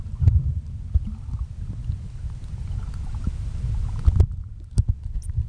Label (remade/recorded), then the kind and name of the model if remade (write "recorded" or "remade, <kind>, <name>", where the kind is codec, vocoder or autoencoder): recorded